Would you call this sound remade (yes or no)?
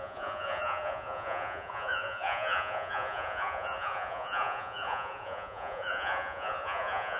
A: yes